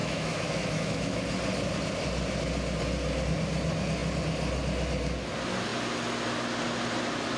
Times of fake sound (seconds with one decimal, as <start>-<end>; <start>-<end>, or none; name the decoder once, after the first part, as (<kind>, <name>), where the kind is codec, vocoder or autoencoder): 0.0-1.2 (autoencoder, DAC-VAE)